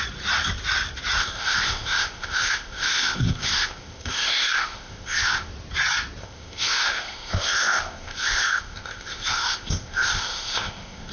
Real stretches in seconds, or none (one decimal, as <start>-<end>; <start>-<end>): 0.0-1.2; 5.5-6.2